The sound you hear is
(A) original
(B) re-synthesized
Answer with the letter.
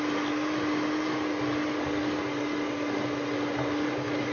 A